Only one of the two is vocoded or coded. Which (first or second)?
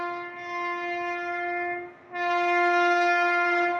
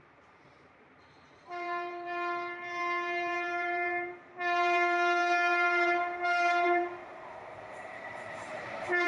second